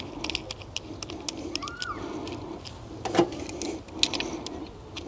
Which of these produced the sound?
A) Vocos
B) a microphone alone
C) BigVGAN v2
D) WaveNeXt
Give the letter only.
B